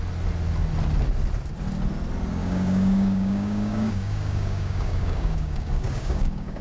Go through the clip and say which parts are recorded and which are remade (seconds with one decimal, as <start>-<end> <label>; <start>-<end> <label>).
0.0-2.4 recorded; 2.4-6.6 remade